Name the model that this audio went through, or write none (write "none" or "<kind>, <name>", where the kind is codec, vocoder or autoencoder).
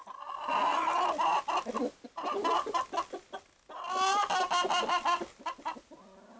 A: none